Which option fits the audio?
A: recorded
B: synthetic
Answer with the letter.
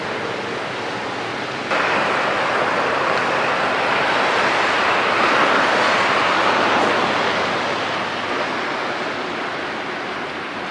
A